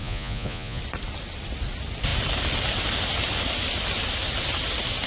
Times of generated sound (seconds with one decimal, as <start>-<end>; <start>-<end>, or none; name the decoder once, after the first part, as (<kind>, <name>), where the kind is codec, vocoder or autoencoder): 0.0-0.8 (vocoder, Vocos)